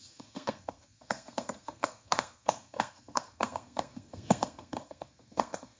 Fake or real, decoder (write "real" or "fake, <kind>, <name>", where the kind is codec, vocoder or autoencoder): fake, codec, SNAC